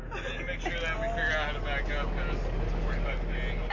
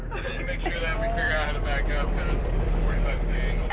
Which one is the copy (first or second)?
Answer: second